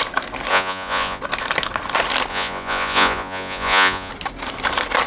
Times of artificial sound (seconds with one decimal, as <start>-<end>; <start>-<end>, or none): 0.5-1.2; 2.3-4.1